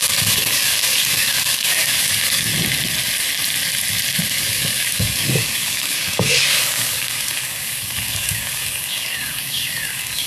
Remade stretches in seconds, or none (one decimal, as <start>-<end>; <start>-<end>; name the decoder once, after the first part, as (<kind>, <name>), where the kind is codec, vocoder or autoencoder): 0.0-2.5 (codec, DAC); 4.3-10.3